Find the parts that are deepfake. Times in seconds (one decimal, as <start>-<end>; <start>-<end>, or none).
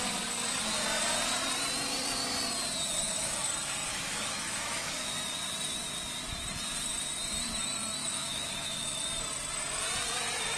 3.0-3.5; 3.9-5.1; 8.0-9.0